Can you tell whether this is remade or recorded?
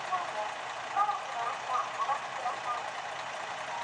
recorded